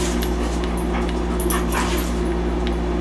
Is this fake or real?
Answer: real